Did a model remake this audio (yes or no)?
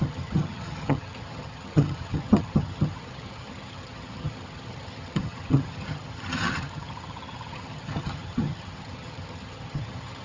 yes